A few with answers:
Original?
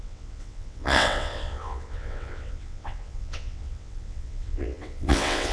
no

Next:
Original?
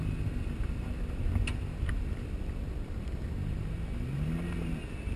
yes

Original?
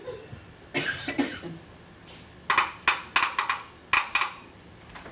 yes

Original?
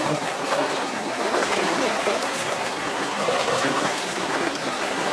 no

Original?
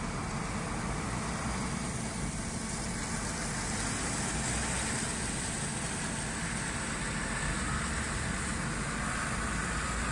yes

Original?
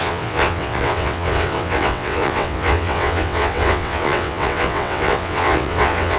no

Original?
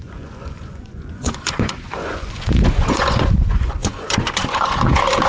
no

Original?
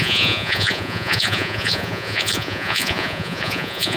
no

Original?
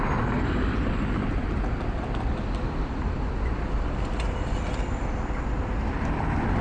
yes